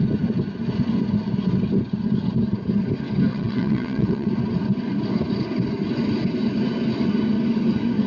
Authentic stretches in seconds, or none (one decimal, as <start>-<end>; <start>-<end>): 0.0-3.3; 4.3-8.1